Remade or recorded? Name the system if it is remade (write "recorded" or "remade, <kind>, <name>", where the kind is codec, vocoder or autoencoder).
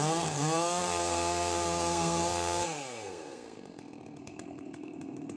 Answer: remade, codec, SNAC